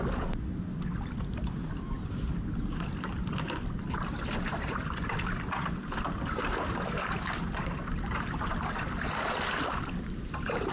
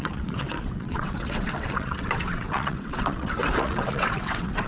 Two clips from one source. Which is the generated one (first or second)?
second